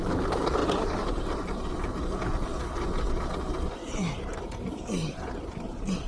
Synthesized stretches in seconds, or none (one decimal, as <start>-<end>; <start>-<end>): 0.6-1.7; 3.8-6.1